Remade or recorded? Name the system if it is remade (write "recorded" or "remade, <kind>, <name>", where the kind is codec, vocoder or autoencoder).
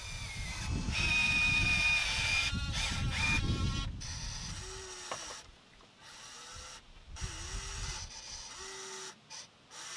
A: recorded